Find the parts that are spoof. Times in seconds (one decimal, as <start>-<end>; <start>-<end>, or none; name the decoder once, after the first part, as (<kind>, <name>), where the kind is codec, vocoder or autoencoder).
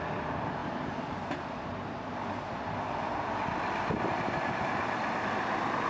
none